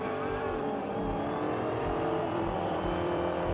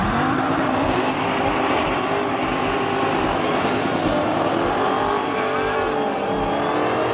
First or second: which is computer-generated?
first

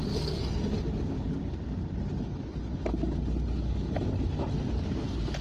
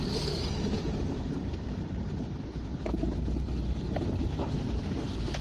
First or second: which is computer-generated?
second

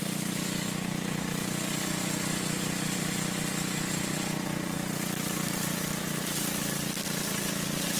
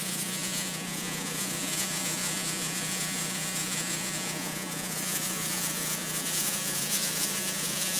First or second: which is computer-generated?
second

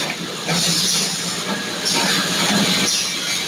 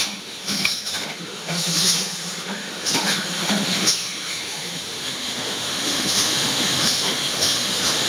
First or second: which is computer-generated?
second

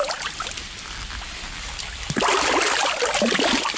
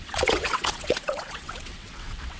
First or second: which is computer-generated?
second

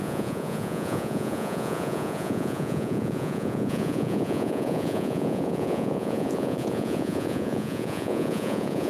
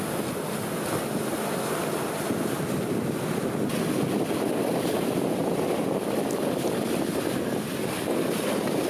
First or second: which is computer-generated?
first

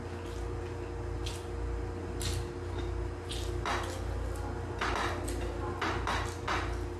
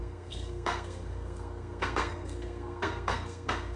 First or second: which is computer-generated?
second